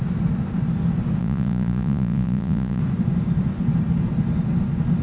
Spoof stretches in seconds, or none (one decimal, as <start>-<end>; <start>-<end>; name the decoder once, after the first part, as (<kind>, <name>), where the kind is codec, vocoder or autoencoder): 1.2-2.8 (vocoder, Vocos)